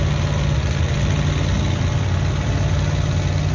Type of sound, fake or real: real